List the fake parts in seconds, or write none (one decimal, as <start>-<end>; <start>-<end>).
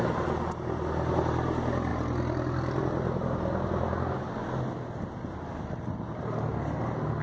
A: none